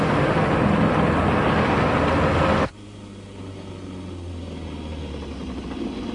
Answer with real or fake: real